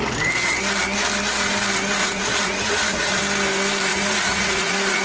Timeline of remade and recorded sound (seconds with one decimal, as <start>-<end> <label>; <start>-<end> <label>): 0.0-2.0 recorded; 2.0-3.2 remade; 3.2-3.9 recorded; 3.9-5.0 remade